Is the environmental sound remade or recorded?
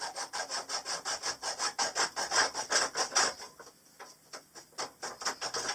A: recorded